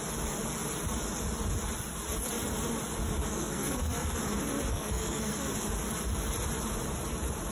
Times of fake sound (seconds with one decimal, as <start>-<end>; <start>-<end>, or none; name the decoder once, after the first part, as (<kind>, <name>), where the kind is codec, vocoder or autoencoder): 3.2-4.2 (codec, SNAC); 4.7-5.5